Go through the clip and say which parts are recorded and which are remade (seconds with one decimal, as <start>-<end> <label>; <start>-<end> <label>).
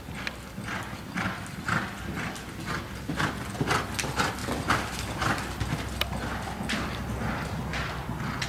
0.0-8.5 recorded